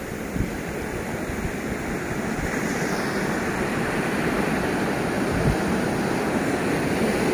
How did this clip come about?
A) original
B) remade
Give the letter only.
B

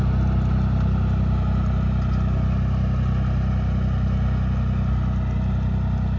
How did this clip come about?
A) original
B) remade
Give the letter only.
A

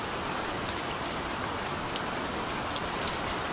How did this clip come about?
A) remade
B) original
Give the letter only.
B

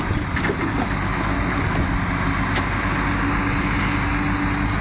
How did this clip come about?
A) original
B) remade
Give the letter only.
A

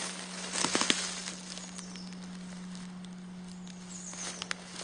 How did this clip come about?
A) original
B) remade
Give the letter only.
A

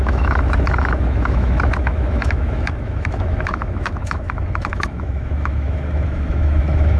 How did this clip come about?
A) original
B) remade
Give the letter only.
B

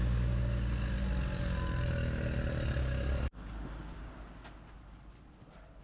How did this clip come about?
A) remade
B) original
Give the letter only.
B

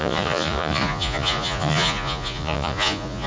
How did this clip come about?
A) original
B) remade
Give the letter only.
B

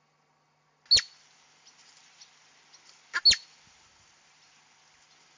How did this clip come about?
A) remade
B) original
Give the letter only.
B